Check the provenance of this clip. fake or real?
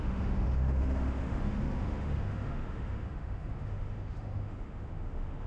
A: fake